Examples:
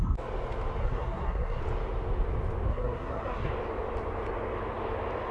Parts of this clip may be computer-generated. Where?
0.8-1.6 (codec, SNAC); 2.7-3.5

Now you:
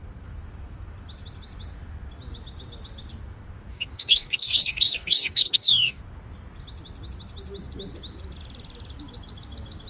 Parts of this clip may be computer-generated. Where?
3.7-6.0 (codec, DAC)

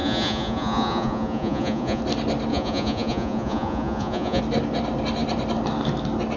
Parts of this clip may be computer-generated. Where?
0.0-2.0 (vocoder, Vocos); 2.5-4.4

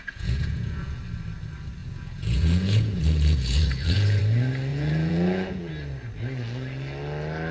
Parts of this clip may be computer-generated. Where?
0.0-1.0 (vocoder, Vocos); 1.8-4.2; 4.7-5.7